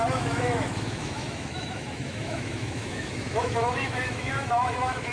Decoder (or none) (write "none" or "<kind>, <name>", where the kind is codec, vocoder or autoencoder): autoencoder, DAC-VAE